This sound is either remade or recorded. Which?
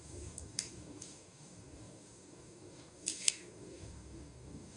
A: remade